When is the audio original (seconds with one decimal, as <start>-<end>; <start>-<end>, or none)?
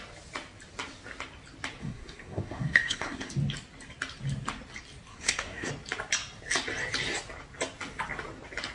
0.0-1.8; 3.3-5.1; 5.7-8.7